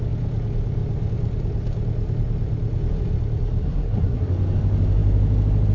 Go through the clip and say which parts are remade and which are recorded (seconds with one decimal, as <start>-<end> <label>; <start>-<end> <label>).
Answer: 0.0-3.6 recorded; 3.6-4.3 remade; 4.3-5.7 recorded